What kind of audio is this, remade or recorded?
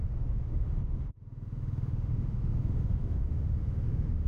remade